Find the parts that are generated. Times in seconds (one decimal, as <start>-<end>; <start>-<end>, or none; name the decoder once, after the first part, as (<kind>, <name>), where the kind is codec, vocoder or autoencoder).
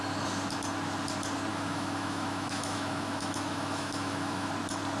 1.5-4.5 (autoencoder, DAC-VAE)